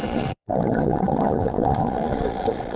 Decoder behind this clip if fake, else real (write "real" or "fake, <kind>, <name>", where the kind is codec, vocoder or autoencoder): fake, vocoder, Vocos